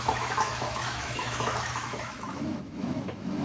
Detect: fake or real fake